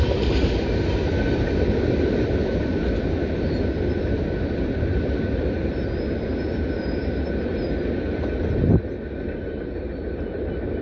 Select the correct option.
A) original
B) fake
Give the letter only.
A